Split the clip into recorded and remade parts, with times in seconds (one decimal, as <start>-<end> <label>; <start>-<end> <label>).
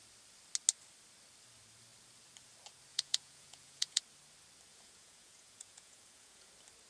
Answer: 0.0-2.9 recorded; 2.9-4.0 remade; 4.0-4.7 recorded; 4.7-6.5 remade; 6.5-6.9 recorded